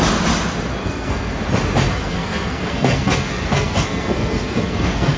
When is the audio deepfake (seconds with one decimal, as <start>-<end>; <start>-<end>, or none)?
0.8-1.4; 2.0-5.2